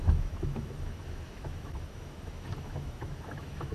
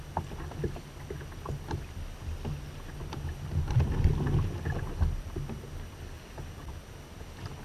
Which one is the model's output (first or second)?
first